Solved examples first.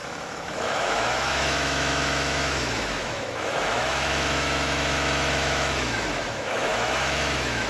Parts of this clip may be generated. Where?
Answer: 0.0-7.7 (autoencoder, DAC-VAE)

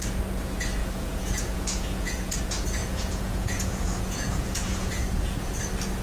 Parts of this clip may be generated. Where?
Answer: 0.8-2.4 (vocoder, Vocos); 2.8-5.6